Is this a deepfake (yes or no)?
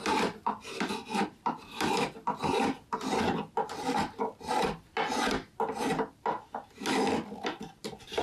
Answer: no